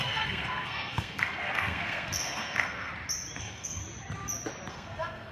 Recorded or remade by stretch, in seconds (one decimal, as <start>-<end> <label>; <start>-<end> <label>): 0.0-2.9 remade; 2.9-3.4 recorded; 3.4-3.8 remade; 3.8-4.7 recorded; 4.7-5.3 remade